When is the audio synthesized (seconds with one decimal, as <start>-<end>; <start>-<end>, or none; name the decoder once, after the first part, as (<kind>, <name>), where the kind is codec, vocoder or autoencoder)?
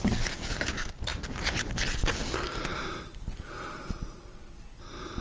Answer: none